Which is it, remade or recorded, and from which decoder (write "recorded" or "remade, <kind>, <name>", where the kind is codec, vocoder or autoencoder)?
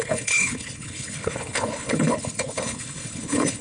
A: remade, codec, HILCodec